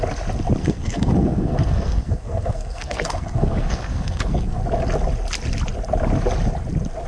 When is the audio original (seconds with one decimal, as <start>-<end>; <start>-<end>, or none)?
0.0-0.6; 4.6-7.1